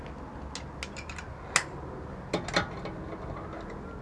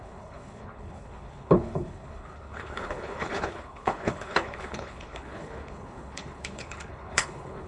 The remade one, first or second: second